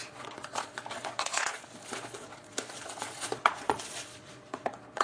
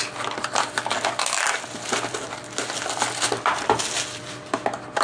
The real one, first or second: second